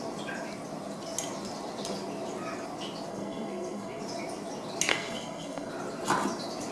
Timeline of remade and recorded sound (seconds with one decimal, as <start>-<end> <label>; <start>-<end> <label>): 0.0-3.1 recorded; 3.1-4.0 remade; 4.0-4.9 recorded; 4.9-5.7 remade; 5.7-6.7 recorded